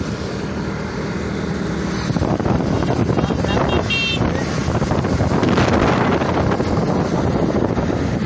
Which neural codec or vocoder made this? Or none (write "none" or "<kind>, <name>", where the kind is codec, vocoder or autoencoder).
none